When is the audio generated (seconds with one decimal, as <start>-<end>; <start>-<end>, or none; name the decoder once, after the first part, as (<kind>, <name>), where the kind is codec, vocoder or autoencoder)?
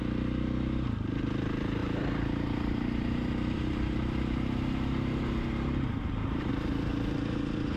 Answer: 1.8-6.5 (vocoder, BigVGAN v2)